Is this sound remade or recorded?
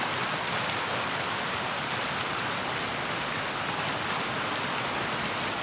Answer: recorded